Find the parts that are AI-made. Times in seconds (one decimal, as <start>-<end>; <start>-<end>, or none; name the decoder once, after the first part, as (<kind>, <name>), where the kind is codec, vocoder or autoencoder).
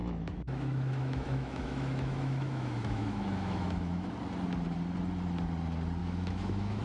0.0-4.1 (autoencoder, DAC-VAE); 6.0-6.8